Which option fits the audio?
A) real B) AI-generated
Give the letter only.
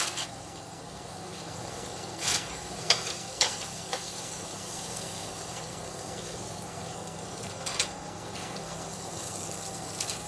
B